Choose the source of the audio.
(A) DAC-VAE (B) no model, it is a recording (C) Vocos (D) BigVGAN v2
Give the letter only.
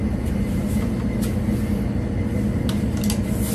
B